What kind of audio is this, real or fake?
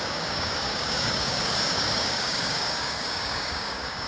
fake